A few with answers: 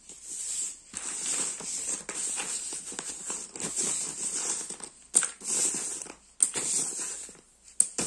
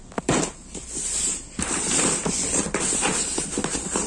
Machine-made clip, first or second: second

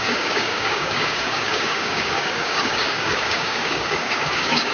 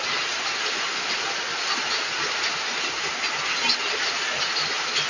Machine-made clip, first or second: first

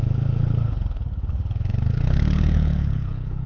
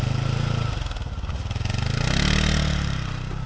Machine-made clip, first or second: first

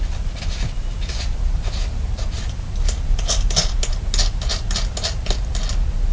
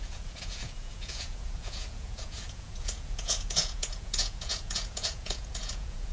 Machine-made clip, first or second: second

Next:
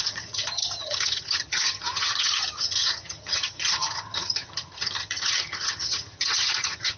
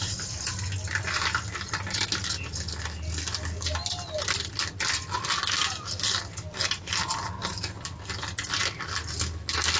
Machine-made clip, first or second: first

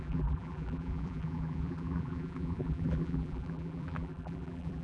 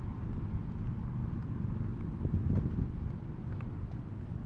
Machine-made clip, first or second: first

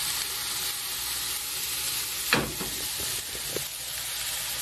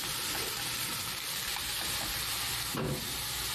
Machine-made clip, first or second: second